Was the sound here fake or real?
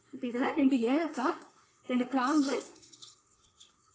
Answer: fake